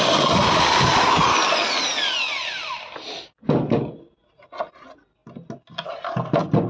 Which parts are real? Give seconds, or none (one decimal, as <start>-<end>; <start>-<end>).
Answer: 0.0-6.7